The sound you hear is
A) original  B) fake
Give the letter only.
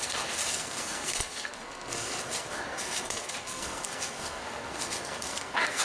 B